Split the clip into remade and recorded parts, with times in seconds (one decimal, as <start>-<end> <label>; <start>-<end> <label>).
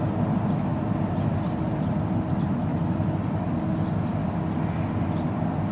0.0-0.7 recorded; 0.7-1.9 remade; 1.9-2.7 recorded; 2.7-3.7 remade; 3.7-5.7 recorded